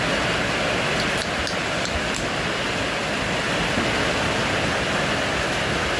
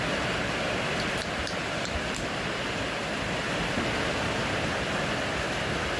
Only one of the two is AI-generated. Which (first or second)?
second